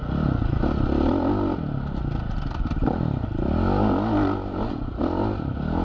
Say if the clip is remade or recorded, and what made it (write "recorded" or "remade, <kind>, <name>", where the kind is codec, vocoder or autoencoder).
recorded